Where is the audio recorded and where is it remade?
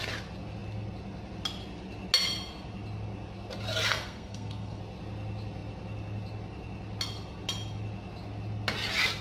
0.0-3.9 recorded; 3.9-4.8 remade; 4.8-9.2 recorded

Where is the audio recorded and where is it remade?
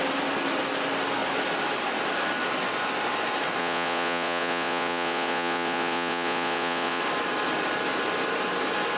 0.0-3.6 recorded; 3.6-7.0 remade; 7.0-9.0 recorded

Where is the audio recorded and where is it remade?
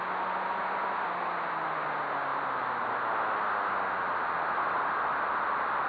0.0-2.3 recorded; 2.3-3.0 remade; 3.0-5.9 recorded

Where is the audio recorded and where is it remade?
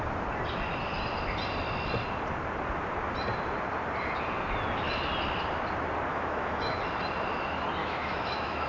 0.0-6.1 recorded; 6.1-6.8 remade; 6.8-7.8 recorded; 7.8-8.7 remade